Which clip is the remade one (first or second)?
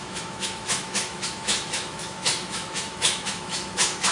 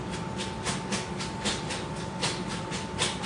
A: first